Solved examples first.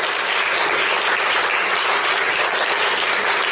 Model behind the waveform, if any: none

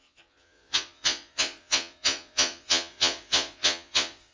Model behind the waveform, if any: vocoder, Vocos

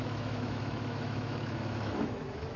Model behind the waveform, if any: autoencoder, DAC-VAE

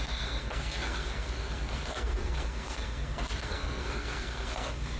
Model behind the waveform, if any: codec, SNAC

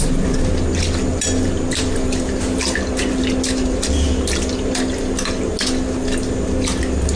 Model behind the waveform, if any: none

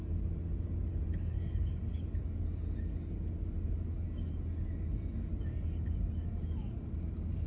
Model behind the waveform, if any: none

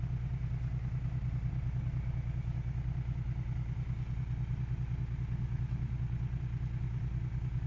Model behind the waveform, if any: none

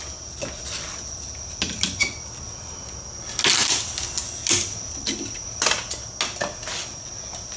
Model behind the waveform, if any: none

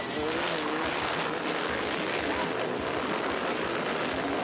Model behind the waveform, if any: none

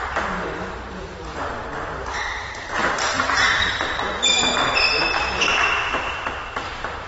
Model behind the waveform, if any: vocoder, BigVGAN v2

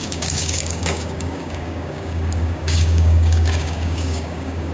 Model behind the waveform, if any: codec, DAC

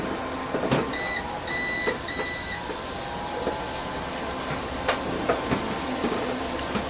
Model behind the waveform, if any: none